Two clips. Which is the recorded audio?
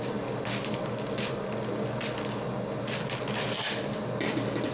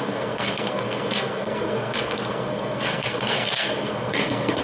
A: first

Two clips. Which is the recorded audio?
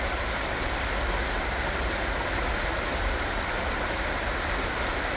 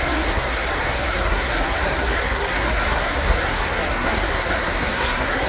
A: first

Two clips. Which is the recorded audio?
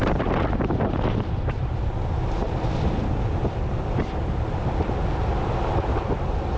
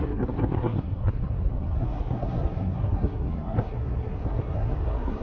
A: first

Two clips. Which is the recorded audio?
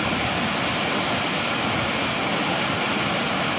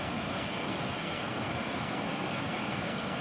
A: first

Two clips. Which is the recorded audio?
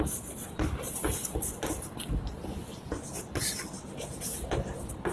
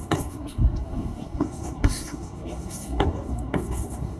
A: first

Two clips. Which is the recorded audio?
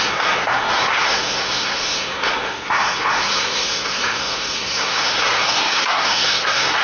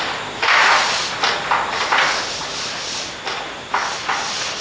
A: second